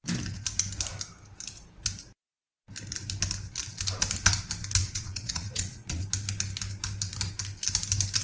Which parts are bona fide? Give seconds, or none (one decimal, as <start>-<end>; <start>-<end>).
0.0-4.8; 6.0-8.2